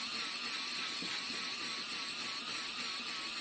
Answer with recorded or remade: recorded